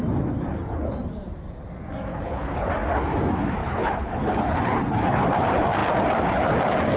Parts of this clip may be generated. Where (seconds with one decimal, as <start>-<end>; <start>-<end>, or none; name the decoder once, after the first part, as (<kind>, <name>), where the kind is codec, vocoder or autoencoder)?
2.1-2.7 (codec, HILCodec); 3.6-4.6